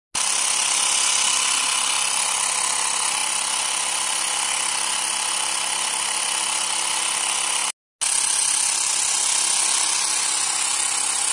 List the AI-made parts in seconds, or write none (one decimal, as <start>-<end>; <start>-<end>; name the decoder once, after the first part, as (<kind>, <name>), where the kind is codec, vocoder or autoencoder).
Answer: none